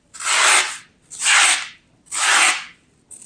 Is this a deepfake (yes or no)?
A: yes